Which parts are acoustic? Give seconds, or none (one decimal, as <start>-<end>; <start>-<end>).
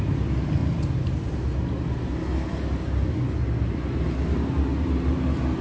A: 0.0-5.6